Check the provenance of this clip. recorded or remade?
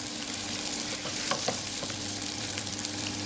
remade